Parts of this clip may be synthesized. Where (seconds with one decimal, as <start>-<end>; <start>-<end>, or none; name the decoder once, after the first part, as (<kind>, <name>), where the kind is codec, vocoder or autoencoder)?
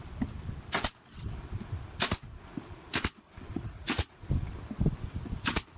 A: 3.5-4.3 (vocoder, Vocos)